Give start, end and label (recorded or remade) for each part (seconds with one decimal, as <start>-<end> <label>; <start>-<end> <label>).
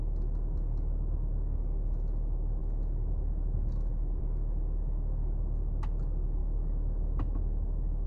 0.0-2.6 recorded; 2.6-4.2 remade; 4.2-6.4 recorded; 6.4-8.1 remade